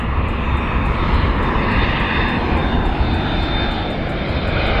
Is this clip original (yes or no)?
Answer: yes